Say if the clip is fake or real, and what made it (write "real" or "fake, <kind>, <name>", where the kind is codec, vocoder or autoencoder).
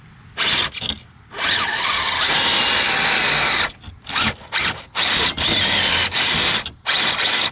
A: real